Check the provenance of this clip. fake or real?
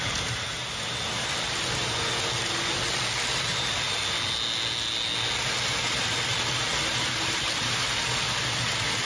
real